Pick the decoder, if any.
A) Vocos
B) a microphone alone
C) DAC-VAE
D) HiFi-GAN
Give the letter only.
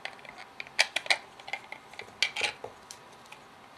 B